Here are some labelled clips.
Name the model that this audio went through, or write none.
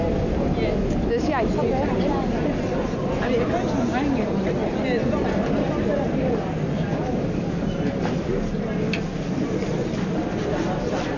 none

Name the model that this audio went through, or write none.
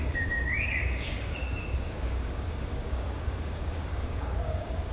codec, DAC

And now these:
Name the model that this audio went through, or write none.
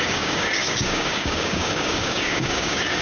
codec, DAC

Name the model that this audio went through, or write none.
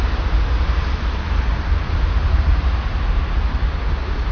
none